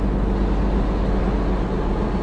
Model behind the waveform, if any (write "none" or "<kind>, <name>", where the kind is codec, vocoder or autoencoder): none